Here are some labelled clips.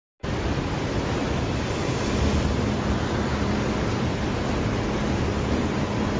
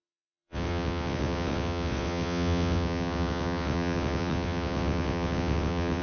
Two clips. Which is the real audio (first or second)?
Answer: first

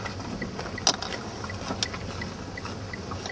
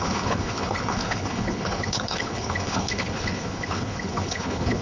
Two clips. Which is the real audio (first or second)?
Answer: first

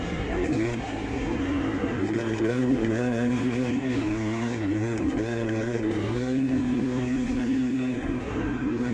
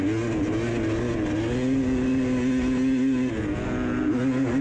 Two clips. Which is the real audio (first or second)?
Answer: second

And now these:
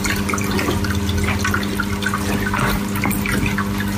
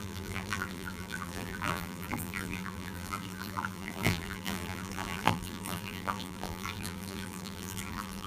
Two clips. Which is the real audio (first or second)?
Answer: first